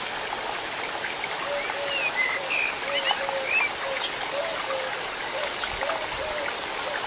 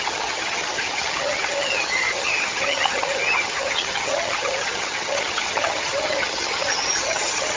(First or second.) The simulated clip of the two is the second